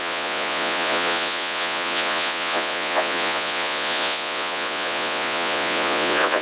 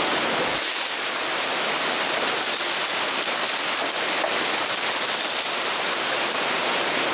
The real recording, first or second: second